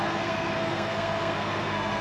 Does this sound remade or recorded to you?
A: remade